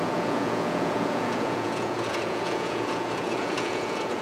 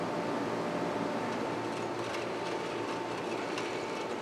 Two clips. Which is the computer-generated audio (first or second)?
first